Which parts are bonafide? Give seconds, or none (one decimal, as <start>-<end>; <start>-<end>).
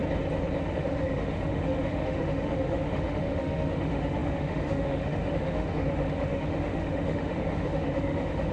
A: 0.0-0.6